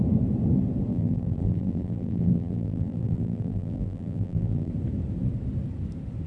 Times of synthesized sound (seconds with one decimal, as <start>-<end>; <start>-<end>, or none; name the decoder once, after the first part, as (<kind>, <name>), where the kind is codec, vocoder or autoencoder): 0.9-4.7 (vocoder, BigVGAN v2)